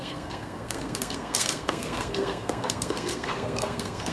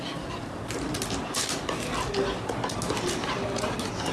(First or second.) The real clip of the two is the second